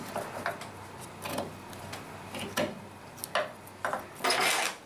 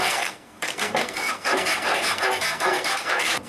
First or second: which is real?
first